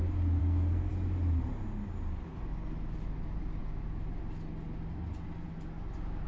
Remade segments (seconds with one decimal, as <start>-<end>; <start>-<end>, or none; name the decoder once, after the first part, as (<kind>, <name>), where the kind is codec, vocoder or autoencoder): 0.4-0.9 (codec, SNAC)

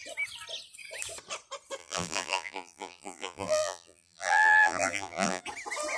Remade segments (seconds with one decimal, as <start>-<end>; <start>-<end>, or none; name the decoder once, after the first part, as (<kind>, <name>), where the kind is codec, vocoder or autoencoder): 1.8-5.4 (vocoder, BigVGAN v2)